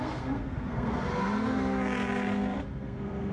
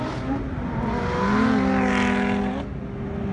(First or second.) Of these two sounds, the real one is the second